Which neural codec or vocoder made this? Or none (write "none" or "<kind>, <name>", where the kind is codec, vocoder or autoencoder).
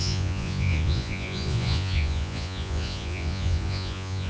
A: vocoder, Vocos